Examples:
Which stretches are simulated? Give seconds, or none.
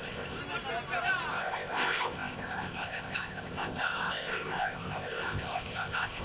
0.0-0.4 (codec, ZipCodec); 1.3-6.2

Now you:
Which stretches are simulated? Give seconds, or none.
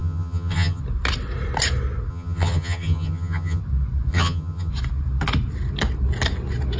0.0-0.8 (vocoder, HiFi-GAN); 2.1-3.6; 4.1-4.7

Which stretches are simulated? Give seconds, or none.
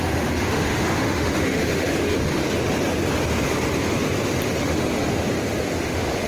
0.0-2.4 (autoencoder, DAC-VAE); 4.6-5.1; 5.8-6.3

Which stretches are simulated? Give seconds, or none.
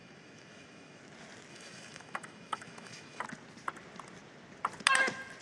0.0-1.0 (autoencoder, DAC-VAE); 1.5-3.2